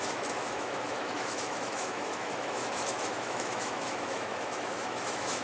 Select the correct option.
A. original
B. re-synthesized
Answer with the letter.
B